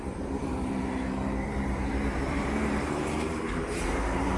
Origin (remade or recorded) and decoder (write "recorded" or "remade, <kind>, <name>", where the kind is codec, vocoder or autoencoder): remade, vocoder, BigVGAN v2